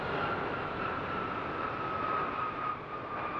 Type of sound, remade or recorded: recorded